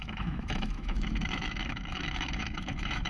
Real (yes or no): no